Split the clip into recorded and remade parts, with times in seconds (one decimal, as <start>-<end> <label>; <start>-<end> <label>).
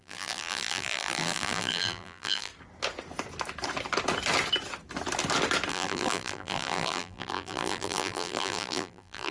0.0-2.5 remade; 2.5-5.7 recorded; 5.7-9.3 remade